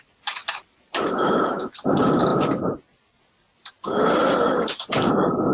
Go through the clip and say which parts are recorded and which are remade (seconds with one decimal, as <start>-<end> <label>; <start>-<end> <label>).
0.0-0.4 recorded; 0.4-1.2 remade; 1.2-4.2 recorded; 4.2-5.1 remade; 5.1-5.5 recorded